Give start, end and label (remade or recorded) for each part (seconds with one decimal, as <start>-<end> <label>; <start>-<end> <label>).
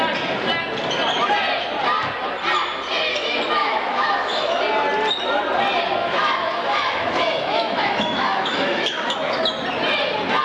0.0-3.6 recorded; 3.6-4.6 remade; 4.6-6.0 recorded; 6.0-9.5 remade; 9.5-10.4 recorded